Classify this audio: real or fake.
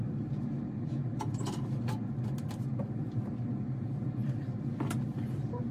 real